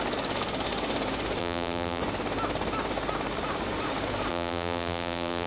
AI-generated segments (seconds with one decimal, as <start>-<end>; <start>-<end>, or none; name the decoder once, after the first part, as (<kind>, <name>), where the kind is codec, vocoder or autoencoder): 1.4-2.0 (vocoder, BigVGAN v2); 4.3-5.5